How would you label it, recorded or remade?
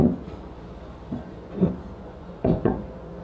remade